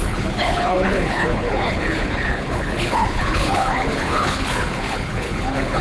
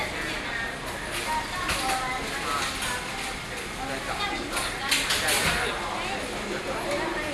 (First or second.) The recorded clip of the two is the second